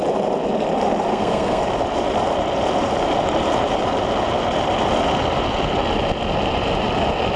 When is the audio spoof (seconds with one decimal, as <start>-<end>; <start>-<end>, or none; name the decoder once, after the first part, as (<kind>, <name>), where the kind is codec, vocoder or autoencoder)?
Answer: 1.1-1.6 (codec, SNAC)